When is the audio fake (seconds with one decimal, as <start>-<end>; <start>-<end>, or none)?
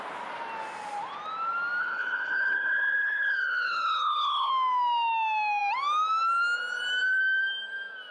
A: 1.8-4.5